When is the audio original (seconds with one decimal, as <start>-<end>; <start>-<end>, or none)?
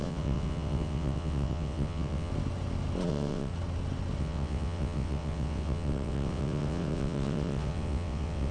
2.3-3.1; 3.5-4.2